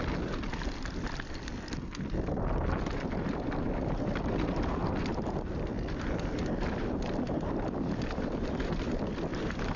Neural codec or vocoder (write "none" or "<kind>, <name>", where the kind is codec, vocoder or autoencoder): vocoder, BigVGAN v2